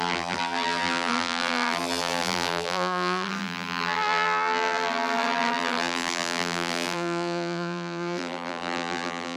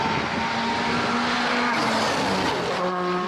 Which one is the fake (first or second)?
first